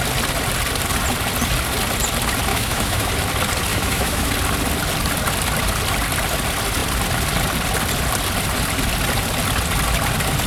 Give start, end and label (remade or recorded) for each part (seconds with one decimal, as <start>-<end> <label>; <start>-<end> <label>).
0.0-2.5 recorded; 2.5-3.1 remade; 3.1-3.7 recorded; 3.7-4.3 remade; 4.3-10.5 recorded